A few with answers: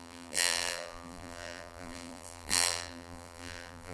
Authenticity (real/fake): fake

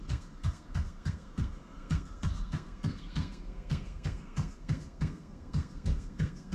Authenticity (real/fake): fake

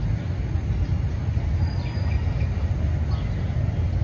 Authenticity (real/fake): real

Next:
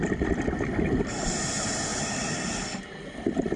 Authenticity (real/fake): real